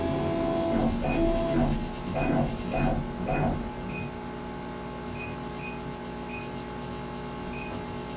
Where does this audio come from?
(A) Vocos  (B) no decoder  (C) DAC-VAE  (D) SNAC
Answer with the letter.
B